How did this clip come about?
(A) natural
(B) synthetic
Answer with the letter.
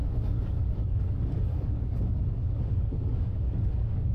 B